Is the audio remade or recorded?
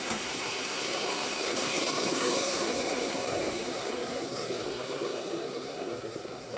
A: remade